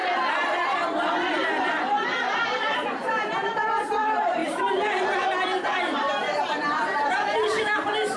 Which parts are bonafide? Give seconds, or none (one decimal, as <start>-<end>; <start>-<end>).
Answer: 0.0-1.3